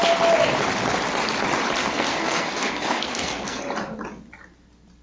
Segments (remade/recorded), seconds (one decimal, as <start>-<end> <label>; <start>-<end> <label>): 0.0-1.8 recorded; 1.8-3.6 remade; 3.6-5.0 recorded